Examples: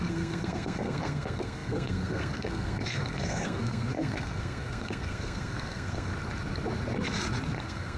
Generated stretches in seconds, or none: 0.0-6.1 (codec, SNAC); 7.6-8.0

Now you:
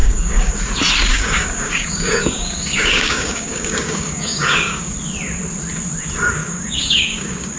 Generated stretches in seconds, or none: 0.0-0.5 (codec, DAC); 1.1-4.9; 6.4-7.6

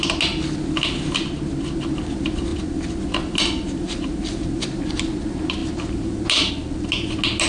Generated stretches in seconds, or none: none

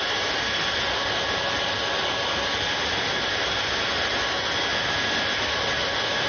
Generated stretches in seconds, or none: none

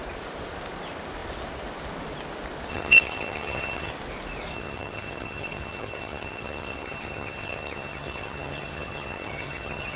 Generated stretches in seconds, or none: 2.7-3.9 (vocoder, HiFi-GAN); 4.5-10.0

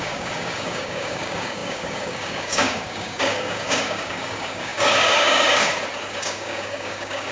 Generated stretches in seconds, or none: 0.0-5.7 (codec, DAC); 6.2-7.3

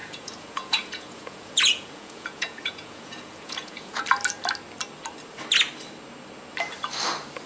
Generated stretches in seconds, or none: 0.0-4.0 (vocoder, Vocos)